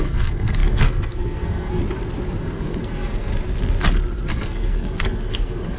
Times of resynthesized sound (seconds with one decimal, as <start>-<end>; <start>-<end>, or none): 0.0-1.8; 2.4-3.3; 4.3-5.8